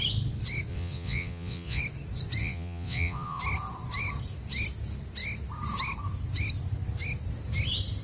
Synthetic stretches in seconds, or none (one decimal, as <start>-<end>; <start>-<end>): 0.7-1.8; 2.4-3.4